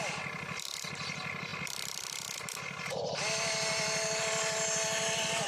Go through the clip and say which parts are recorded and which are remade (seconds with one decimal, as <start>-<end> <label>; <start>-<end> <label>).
0.0-5.5 recorded